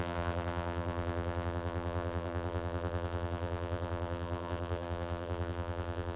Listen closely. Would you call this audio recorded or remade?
remade